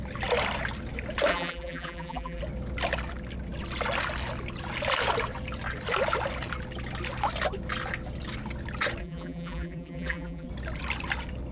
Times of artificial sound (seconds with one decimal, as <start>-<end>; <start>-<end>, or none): 1.3-2.4; 9.0-10.5